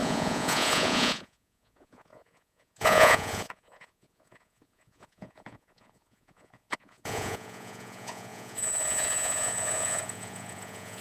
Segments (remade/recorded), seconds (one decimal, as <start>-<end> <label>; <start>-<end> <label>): 0.0-11.0 remade